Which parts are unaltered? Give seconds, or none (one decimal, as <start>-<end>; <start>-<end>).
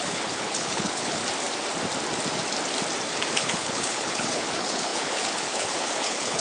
1.2-3.3